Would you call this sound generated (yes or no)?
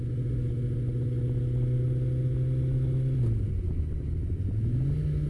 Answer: no